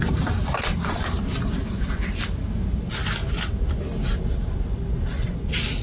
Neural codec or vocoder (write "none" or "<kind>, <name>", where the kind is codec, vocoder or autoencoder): none